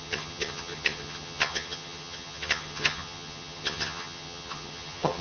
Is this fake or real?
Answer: fake